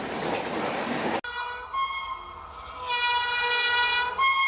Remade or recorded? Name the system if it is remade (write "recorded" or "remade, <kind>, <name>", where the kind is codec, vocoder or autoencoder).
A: recorded